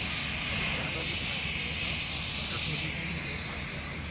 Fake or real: real